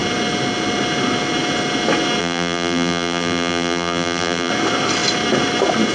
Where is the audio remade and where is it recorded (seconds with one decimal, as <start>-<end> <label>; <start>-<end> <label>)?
0.0-2.2 recorded; 2.2-4.5 remade; 4.5-5.9 recorded